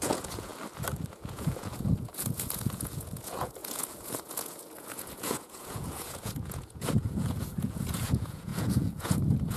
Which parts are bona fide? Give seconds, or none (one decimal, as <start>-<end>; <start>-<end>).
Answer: 0.5-1.1